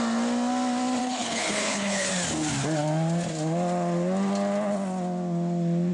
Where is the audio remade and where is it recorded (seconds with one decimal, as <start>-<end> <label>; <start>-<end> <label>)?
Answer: 0.0-1.0 recorded; 1.0-2.1 remade; 2.1-5.9 recorded